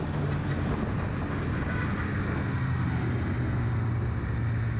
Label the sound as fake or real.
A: real